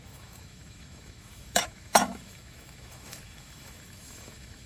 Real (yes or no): no